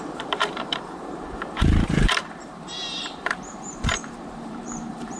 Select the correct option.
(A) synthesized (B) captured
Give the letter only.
A